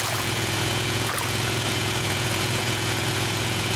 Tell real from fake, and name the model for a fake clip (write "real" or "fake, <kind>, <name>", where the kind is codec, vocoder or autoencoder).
fake, vocoder, Vocos